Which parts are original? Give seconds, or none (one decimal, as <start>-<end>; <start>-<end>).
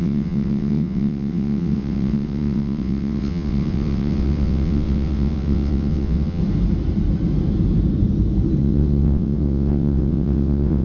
6.4-8.6